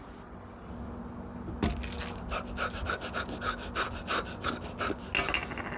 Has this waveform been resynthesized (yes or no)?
no